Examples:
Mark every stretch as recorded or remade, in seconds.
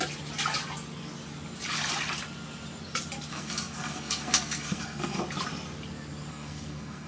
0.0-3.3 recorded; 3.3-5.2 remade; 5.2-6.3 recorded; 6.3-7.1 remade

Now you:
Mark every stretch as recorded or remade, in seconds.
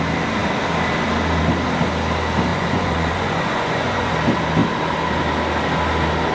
0.0-2.5 recorded; 2.5-4.1 remade; 4.1-6.3 recorded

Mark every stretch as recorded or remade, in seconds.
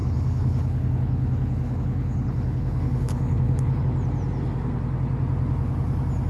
0.0-3.8 remade; 3.8-6.3 recorded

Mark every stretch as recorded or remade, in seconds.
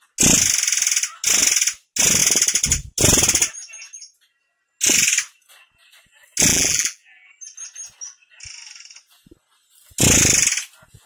0.0-6.5 recorded; 6.5-7.3 remade; 7.3-11.1 recorded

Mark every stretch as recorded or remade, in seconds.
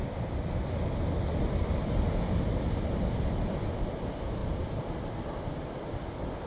0.0-6.5 recorded